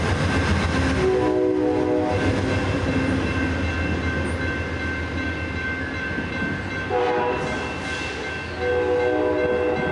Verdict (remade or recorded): recorded